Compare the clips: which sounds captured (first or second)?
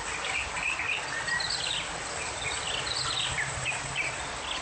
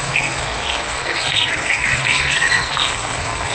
first